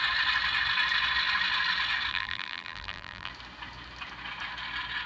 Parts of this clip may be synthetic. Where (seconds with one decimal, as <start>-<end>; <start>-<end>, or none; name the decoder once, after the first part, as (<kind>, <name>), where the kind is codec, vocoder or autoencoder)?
2.1-3.3 (vocoder, BigVGAN v2)